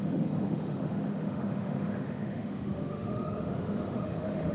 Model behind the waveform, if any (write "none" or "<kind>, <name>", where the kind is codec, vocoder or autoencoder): autoencoder, DAC-VAE